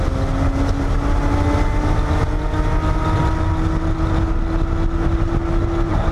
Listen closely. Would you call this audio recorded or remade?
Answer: recorded